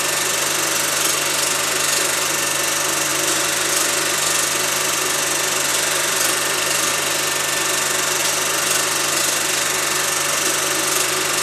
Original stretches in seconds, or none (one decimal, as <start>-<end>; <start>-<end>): 0.0-3.1; 3.7-5.7; 6.9-11.4